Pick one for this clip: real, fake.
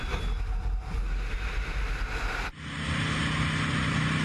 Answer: real